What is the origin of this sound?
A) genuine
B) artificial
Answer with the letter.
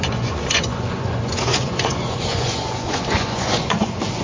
B